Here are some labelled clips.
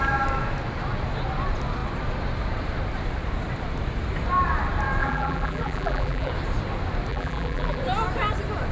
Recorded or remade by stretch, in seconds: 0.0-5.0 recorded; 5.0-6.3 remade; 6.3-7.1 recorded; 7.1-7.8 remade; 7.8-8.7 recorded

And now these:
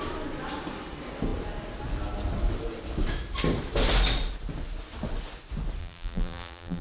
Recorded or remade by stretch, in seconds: 0.0-5.8 recorded; 5.8-6.8 remade

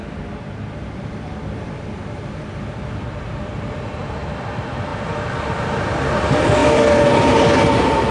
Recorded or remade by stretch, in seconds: 0.0-3.6 remade; 3.6-6.6 recorded; 6.6-7.1 remade; 7.1-8.1 recorded

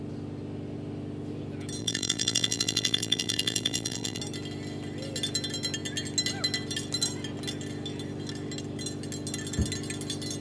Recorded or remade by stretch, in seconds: 0.0-1.8 recorded; 1.8-4.2 remade; 4.2-10.4 recorded

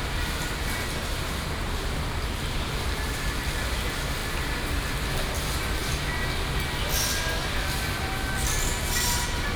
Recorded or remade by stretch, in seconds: 0.0-9.6 recorded

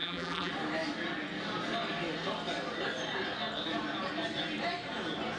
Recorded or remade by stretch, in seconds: 0.0-0.5 remade; 0.5-5.4 recorded

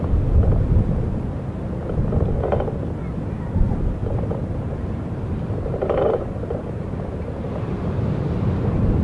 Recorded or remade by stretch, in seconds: 0.0-4.0 recorded; 4.0-7.9 remade; 7.9-9.0 recorded